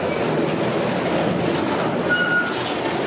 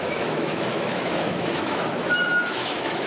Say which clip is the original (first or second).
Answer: first